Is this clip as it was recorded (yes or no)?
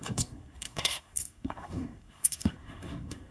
no